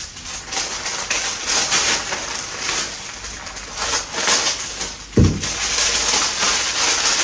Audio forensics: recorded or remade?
recorded